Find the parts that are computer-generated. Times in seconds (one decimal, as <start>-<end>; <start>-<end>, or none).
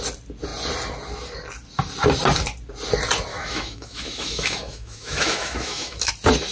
3.3-6.1